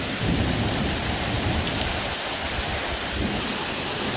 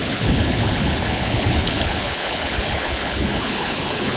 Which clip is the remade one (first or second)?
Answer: second